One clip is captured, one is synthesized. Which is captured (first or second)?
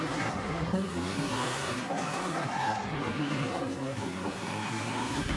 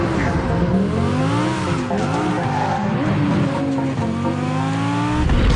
second